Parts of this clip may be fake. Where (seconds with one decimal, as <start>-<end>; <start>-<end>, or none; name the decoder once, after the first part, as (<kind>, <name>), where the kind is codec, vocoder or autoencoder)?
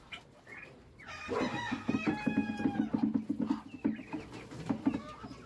none